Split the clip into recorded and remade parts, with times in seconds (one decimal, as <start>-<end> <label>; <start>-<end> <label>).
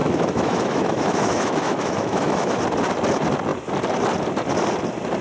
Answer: 0.0-2.6 remade; 2.6-5.2 recorded